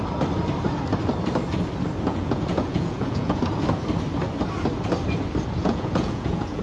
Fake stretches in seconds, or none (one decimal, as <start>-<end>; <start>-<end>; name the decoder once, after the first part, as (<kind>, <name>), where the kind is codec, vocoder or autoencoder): 2.1-3.4 (vocoder, Vocos); 5.6-6.6